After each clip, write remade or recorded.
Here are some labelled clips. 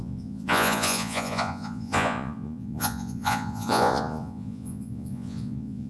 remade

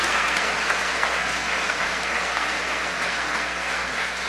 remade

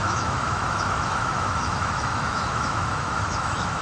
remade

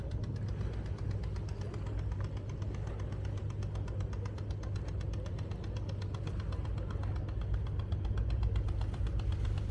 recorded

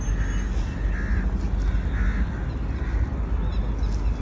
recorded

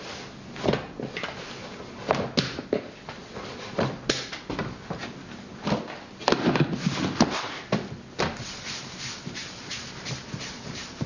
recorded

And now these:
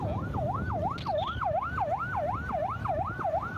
recorded